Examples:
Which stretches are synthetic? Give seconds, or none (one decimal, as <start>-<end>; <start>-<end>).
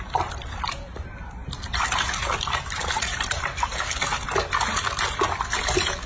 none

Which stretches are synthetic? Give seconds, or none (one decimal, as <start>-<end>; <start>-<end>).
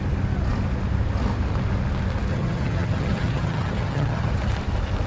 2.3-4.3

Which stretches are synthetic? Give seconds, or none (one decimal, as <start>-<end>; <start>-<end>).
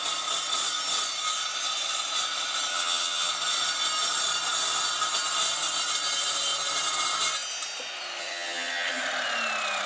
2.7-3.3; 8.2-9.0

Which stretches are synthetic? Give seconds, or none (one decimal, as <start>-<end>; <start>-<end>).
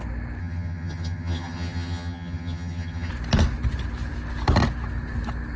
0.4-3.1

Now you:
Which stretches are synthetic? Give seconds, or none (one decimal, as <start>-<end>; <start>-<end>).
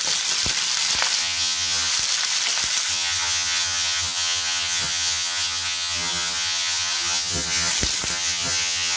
1.2-1.9; 2.9-7.7; 8.1-9.0